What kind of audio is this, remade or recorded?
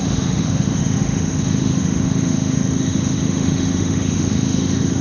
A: remade